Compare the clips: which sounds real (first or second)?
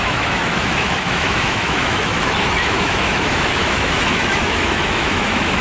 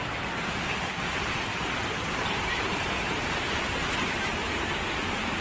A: second